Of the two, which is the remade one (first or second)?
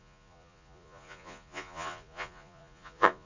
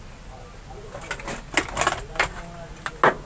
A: first